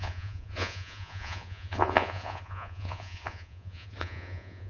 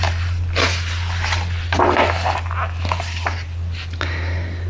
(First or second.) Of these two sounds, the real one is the second